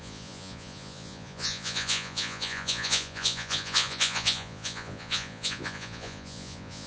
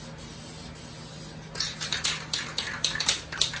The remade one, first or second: first